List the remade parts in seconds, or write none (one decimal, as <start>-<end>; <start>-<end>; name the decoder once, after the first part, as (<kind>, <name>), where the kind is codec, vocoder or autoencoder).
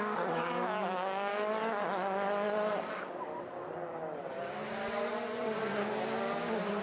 0.0-1.3 (codec, DAC); 2.9-3.3